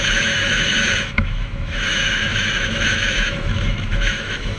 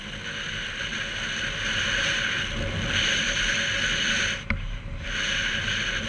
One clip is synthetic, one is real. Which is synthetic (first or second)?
first